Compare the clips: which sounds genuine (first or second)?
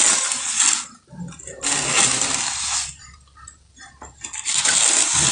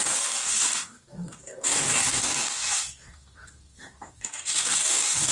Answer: first